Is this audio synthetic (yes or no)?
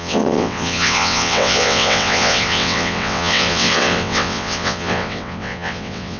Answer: yes